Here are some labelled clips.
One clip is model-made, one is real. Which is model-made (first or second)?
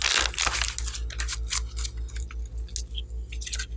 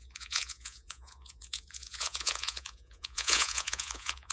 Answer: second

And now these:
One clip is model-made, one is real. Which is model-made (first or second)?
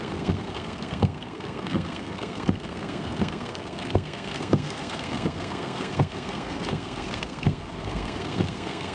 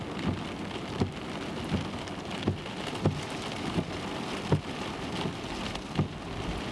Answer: first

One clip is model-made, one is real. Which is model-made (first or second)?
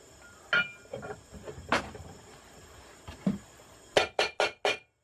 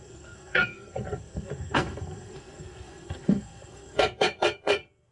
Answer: second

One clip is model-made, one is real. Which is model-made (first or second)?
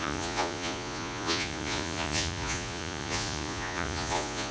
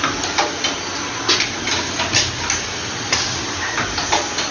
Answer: first